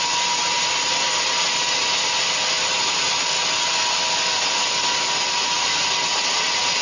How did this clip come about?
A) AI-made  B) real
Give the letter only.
B